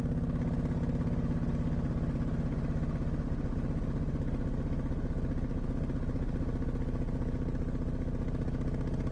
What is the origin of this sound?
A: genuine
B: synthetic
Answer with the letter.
A